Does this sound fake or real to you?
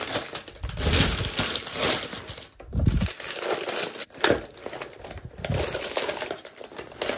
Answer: real